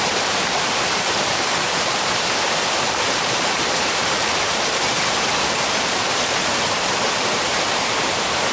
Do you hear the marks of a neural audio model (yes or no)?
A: yes